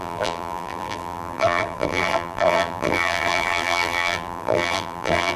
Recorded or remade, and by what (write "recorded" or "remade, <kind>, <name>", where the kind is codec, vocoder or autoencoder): remade, vocoder, BigVGAN v2